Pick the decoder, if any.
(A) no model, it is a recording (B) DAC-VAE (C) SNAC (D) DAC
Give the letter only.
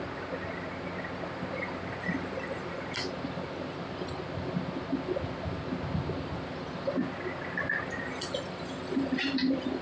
A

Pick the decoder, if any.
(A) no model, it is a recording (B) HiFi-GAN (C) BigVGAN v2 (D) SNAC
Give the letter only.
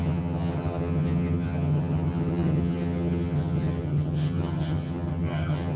B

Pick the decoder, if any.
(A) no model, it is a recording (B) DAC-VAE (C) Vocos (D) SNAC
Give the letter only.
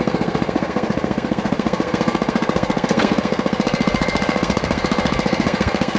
D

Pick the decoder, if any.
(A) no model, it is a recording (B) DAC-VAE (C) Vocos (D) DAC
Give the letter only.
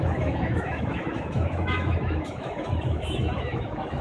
B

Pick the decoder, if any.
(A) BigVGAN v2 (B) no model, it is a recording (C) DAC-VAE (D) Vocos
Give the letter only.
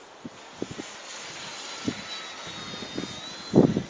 B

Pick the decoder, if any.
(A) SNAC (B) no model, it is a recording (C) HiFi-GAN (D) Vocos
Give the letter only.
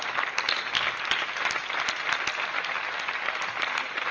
B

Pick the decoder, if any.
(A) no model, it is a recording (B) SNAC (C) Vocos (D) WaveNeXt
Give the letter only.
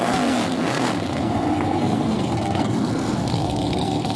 B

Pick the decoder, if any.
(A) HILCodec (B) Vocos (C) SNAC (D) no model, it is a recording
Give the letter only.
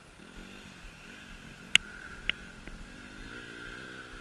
D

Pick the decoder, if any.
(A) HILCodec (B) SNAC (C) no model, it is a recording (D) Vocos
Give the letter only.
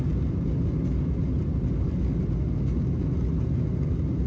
C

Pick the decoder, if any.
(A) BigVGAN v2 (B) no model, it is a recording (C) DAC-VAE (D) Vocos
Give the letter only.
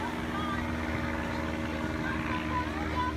B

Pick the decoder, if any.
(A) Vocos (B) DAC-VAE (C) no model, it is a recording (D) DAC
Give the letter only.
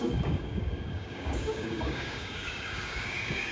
D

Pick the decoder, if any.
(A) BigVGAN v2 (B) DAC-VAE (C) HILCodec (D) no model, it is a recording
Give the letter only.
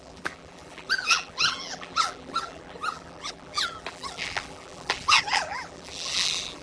A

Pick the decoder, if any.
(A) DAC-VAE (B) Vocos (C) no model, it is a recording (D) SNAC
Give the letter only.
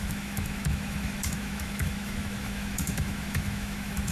A